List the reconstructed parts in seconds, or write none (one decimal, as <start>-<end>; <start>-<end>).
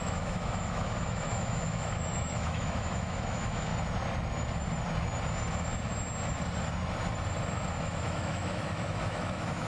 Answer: 0.0-3.7; 7.8-9.7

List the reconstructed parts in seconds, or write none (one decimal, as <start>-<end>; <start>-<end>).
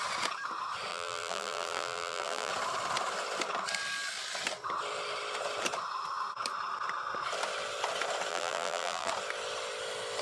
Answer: 0.9-2.5; 8.3-9.1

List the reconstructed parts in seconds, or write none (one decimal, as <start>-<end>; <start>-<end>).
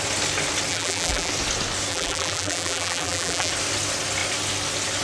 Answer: 0.7-1.3; 1.9-3.5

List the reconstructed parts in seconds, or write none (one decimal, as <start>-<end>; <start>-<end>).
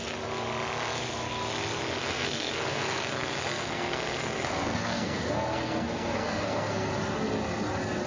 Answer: 2.0-6.9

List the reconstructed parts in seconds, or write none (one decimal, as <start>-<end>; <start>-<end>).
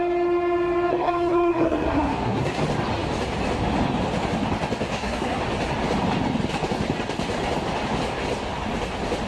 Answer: 0.9-2.6; 4.9-5.4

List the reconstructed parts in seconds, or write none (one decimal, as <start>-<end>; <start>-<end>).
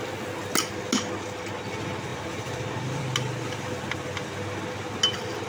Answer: 2.1-3.0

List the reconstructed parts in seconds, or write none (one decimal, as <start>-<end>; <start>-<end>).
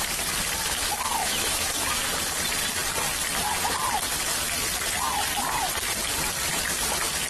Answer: 1.2-2.1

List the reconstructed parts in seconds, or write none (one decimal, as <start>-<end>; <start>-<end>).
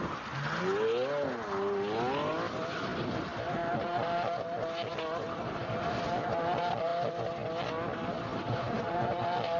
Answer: none